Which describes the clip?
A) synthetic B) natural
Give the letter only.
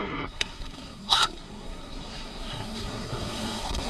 A